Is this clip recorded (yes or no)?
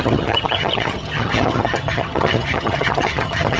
no